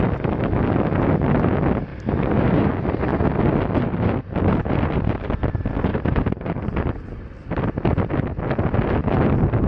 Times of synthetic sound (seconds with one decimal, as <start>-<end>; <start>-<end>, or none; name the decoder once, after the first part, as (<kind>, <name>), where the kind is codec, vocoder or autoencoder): 1.9-2.7 (vocoder, BigVGAN v2); 5.9-7.0